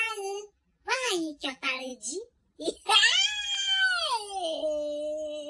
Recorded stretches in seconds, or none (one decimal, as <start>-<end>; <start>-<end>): 1.9-5.5